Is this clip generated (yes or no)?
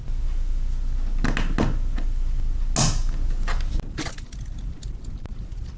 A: no